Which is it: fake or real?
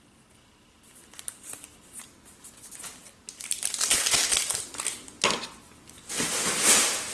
real